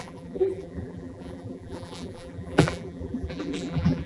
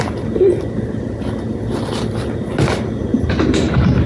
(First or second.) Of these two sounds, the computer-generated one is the first